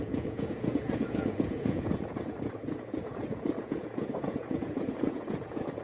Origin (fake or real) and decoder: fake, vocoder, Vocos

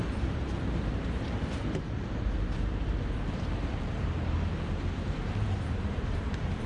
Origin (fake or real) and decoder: fake, vocoder, BigVGAN v2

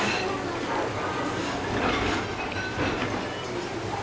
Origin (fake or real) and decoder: real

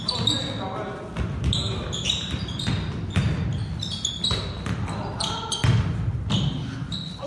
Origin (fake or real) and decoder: real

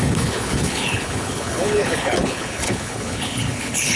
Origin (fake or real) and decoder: fake, codec, HILCodec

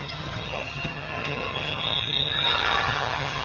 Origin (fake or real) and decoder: fake, vocoder, HiFi-GAN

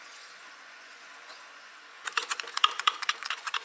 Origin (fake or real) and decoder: fake, vocoder, Vocos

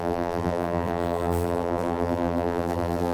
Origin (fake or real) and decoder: fake, vocoder, BigVGAN v2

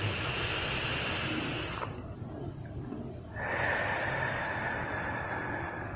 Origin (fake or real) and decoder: real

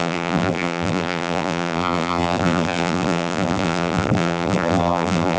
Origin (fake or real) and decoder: fake, vocoder, BigVGAN v2